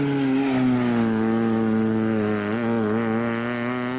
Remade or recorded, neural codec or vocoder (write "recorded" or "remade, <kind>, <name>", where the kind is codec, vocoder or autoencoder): recorded